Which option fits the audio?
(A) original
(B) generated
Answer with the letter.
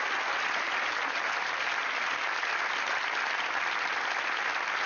A